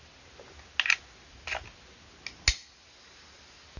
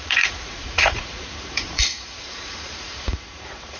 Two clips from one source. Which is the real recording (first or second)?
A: first